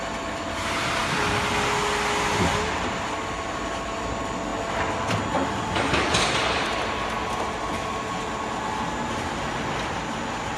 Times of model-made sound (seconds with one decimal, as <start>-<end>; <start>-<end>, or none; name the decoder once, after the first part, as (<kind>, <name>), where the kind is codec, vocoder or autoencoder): none